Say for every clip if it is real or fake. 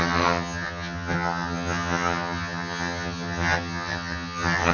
fake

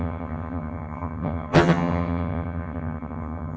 fake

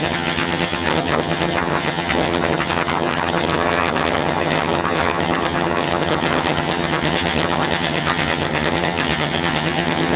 fake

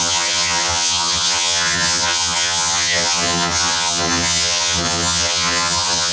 fake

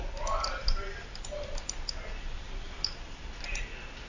real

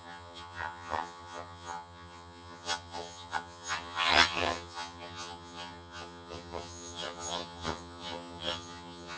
fake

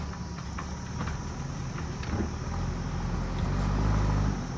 real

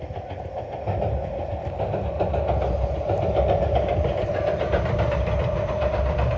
real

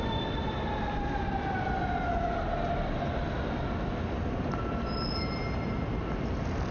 real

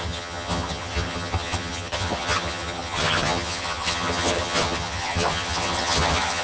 fake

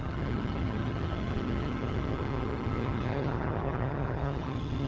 fake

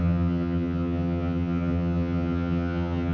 fake